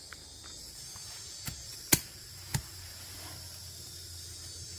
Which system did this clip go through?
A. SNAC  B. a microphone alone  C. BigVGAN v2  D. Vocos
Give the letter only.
B